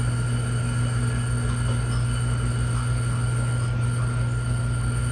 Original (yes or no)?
yes